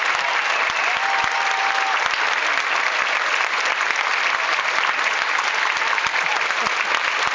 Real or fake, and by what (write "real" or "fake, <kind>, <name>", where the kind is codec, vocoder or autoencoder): real